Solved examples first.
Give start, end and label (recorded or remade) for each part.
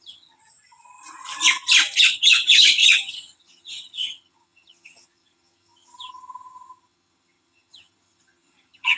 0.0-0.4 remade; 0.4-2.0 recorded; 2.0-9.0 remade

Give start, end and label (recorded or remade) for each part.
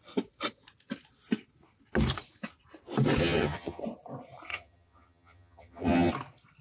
0.0-3.2 recorded; 3.2-3.8 remade; 3.8-4.5 recorded; 4.5-6.1 remade; 6.1-6.6 recorded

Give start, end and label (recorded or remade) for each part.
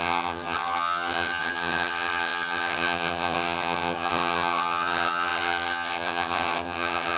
0.0-7.2 remade